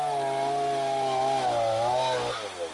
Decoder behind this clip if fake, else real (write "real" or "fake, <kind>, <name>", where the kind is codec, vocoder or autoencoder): real